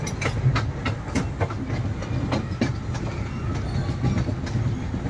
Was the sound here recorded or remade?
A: recorded